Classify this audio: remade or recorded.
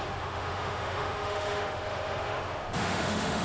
remade